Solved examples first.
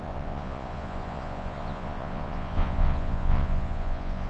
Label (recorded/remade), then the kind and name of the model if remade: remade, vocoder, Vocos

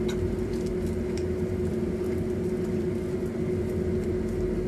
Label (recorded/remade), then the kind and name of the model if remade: recorded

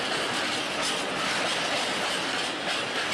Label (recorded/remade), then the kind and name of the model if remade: recorded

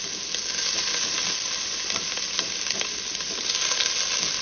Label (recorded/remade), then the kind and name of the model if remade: recorded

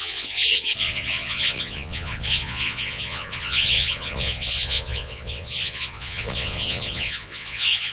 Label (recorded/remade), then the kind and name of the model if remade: remade, vocoder, Vocos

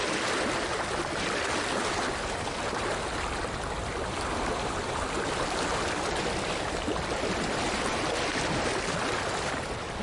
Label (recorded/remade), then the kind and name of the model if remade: recorded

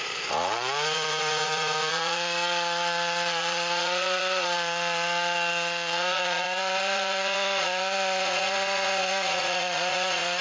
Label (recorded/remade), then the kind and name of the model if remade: remade, vocoder, Vocos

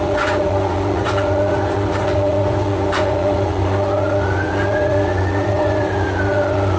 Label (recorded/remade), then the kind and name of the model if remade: remade, vocoder, Vocos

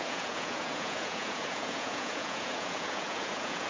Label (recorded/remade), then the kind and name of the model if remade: remade, vocoder, Vocos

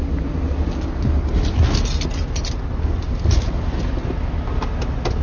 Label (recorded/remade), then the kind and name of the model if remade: recorded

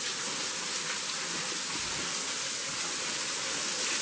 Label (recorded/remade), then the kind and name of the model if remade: recorded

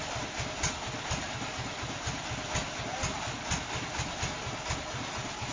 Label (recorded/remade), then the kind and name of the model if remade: recorded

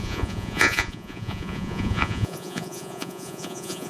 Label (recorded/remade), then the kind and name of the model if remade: remade, vocoder, Vocos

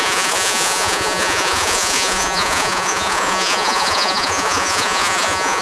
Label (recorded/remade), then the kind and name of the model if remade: remade, vocoder, Vocos